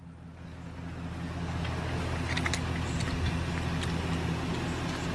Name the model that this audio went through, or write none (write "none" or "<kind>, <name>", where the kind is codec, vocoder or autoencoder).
none